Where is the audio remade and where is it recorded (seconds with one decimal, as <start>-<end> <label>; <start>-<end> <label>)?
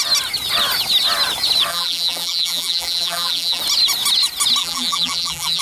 0.0-1.7 recorded; 1.7-3.6 remade; 3.6-4.6 recorded; 4.6-5.6 remade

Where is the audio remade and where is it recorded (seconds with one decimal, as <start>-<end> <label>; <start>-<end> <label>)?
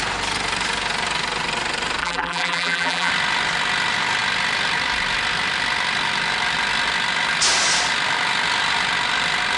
0.0-2.0 recorded; 2.0-3.1 remade; 3.1-9.6 recorded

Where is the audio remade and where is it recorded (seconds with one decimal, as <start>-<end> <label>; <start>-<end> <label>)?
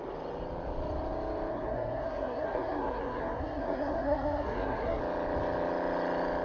0.0-1.5 recorded; 1.5-5.0 remade; 5.0-6.4 recorded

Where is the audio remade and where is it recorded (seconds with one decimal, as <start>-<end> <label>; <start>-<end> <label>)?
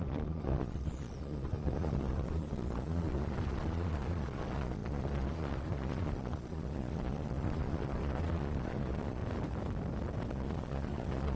0.0-9.2 remade; 9.2-10.3 recorded; 10.3-11.4 remade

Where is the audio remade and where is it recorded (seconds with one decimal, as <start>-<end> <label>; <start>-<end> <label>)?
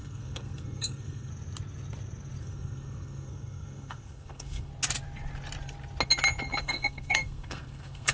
0.0-1.3 remade; 1.3-2.4 recorded; 2.4-4.7 remade; 4.7-6.6 recorded; 6.6-8.1 remade